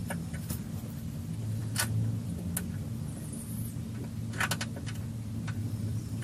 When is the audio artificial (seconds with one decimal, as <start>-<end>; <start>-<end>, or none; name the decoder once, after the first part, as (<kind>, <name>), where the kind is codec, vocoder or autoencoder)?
0.0-0.6 (vocoder, BigVGAN v2); 5.6-6.2